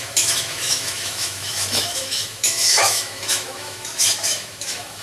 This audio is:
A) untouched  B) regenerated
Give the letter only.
B